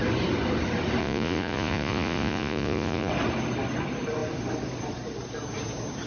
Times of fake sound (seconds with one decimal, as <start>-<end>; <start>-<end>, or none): 1.0-3.1